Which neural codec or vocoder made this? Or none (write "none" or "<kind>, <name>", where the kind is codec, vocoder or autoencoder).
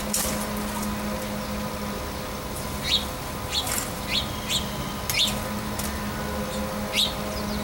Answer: none